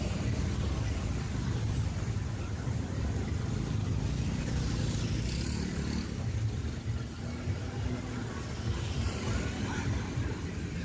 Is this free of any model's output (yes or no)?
yes